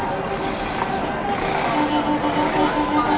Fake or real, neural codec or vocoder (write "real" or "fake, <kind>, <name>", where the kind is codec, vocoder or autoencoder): real